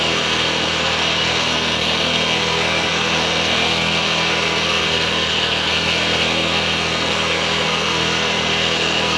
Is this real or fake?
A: fake